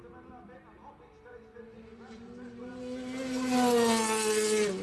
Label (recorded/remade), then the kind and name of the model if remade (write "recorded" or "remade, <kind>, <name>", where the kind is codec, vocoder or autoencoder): recorded